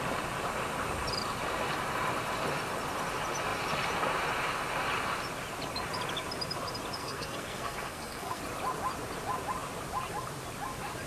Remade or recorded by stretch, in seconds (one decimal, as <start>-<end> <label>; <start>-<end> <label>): 0.0-7.0 recorded; 7.0-8.4 remade; 8.4-11.1 recorded